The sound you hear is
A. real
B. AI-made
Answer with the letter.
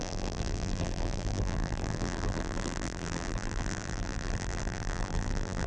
B